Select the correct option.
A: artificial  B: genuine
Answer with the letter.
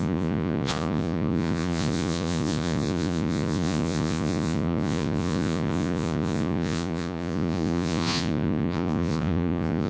A